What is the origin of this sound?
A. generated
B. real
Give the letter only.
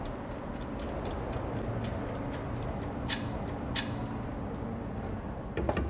B